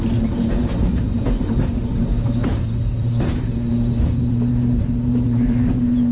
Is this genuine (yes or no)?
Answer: no